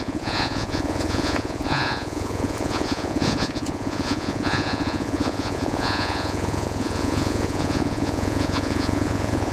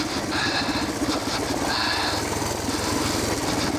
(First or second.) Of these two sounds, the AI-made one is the first